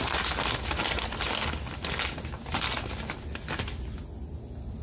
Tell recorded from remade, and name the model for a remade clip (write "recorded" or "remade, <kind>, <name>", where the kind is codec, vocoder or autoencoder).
recorded